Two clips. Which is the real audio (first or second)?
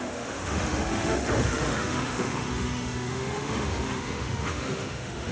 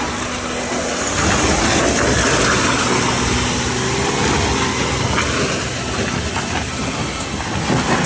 second